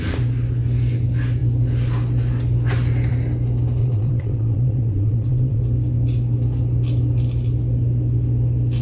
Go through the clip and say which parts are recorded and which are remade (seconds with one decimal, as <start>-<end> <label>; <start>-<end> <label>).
0.0-3.8 recorded; 3.8-5.6 remade; 5.6-8.8 recorded